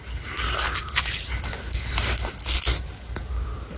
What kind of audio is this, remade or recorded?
recorded